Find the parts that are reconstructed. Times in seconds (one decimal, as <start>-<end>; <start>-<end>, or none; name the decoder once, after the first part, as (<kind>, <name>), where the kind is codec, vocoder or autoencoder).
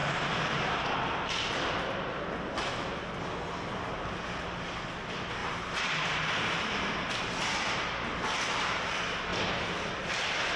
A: 0.0-0.8 (vocoder, BigVGAN v2); 5.4-6.9; 9.3-10.1